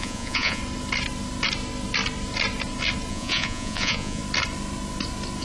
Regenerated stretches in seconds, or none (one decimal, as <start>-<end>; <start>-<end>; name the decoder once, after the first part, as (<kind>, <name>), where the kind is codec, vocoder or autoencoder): 0.0-0.6 (vocoder, Vocos); 3.1-4.2